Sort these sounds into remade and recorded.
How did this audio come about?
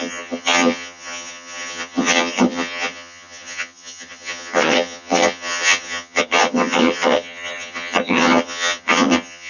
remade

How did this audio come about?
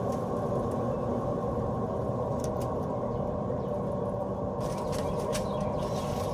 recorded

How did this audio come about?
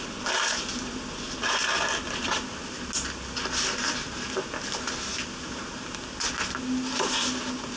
recorded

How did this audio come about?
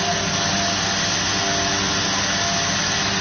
recorded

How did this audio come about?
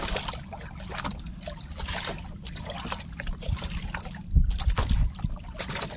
remade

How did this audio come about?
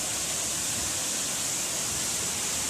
recorded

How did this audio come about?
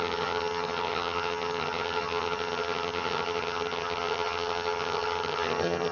remade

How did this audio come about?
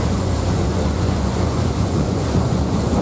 remade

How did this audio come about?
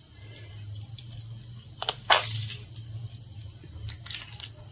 recorded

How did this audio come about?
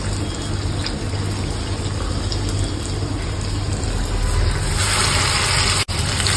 recorded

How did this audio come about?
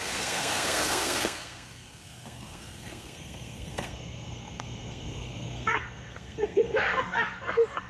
remade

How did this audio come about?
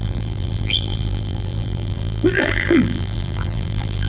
remade